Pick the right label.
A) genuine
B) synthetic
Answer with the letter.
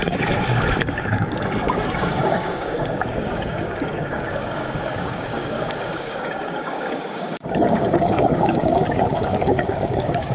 B